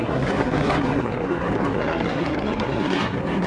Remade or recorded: remade